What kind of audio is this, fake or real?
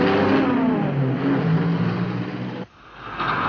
real